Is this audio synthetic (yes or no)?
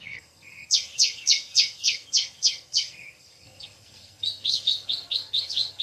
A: yes